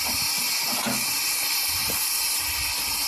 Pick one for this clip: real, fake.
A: real